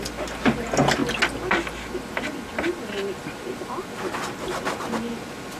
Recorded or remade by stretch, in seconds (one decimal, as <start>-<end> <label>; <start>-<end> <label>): 0.0-5.6 recorded